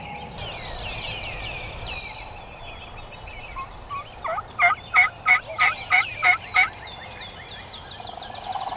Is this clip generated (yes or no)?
yes